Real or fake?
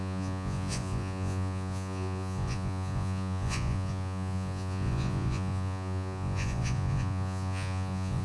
fake